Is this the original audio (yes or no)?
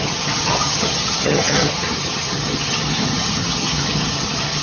no